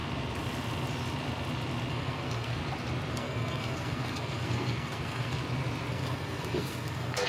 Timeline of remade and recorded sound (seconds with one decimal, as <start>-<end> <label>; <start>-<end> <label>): 0.0-1.9 recorded; 1.9-2.6 remade; 2.6-3.1 recorded; 3.1-5.4 remade; 5.4-5.9 recorded; 5.9-7.3 remade